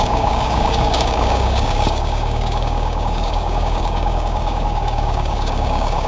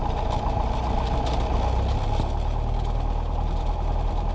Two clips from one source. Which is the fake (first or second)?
first